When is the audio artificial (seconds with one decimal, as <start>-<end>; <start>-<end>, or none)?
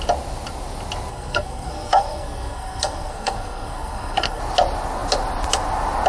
1.1-4.4